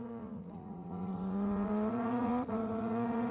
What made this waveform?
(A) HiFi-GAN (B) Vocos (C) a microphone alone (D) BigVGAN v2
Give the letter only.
B